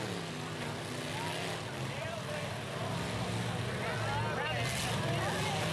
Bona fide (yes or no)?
yes